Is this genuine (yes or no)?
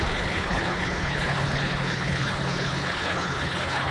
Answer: no